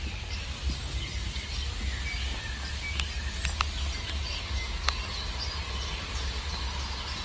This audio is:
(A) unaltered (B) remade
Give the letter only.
A